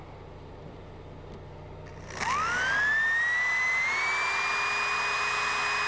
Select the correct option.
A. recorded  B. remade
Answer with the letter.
A